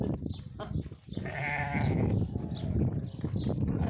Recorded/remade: recorded